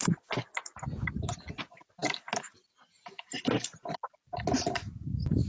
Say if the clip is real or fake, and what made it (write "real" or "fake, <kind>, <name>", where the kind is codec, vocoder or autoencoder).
real